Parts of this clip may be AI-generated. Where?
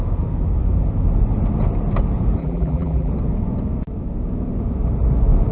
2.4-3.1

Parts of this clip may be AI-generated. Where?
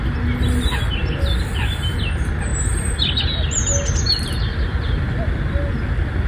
none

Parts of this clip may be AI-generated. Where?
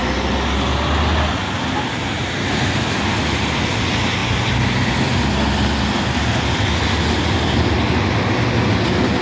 none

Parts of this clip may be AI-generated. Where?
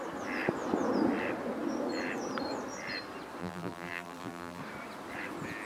3.4-4.6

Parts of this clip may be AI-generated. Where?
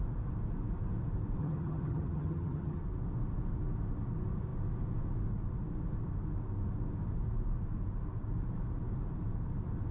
1.4-2.8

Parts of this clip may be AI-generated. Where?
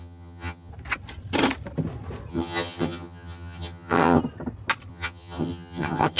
0.0-0.7; 2.3-4.2; 4.9-6.2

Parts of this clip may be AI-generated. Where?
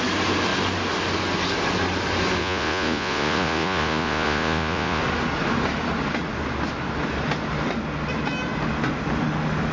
2.4-5.0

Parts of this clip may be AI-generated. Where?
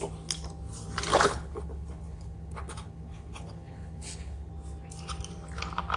1.1-4.5